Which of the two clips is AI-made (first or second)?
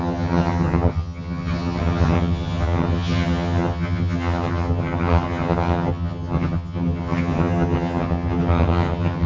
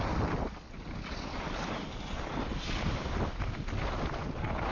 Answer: first